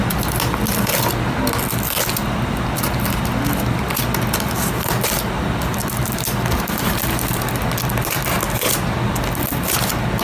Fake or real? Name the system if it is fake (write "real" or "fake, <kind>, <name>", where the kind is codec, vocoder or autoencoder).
real